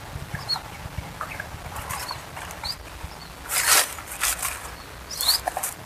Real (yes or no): yes